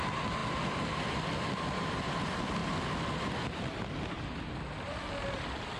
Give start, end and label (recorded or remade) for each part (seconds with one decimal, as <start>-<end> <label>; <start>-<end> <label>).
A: 0.0-5.8 recorded